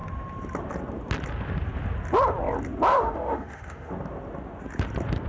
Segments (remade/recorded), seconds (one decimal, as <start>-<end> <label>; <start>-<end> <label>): 0.0-2.9 recorded; 2.9-3.9 remade; 3.9-5.3 recorded